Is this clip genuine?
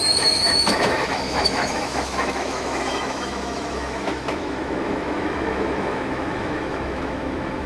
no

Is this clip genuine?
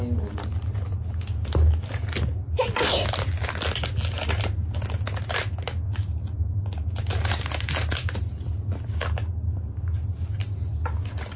yes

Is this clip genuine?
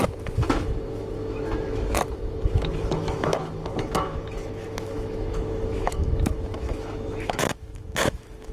no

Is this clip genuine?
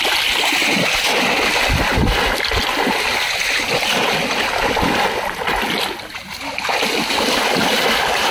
yes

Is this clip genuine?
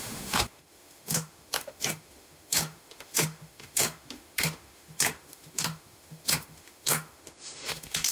no